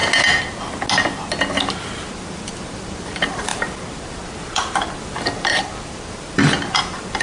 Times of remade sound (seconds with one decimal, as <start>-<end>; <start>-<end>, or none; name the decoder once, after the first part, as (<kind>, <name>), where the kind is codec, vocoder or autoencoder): 2.0-7.2 (vocoder, BigVGAN v2)